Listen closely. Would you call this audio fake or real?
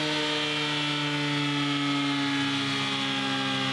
real